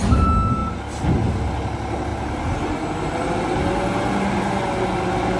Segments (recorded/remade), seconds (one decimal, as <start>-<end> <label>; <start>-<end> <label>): 0.0-5.4 recorded